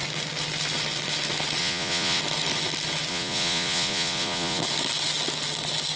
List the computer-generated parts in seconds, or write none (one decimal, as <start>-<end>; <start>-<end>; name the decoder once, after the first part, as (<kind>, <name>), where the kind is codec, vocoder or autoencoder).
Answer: 1.6-2.2 (vocoder, Vocos); 3.1-4.6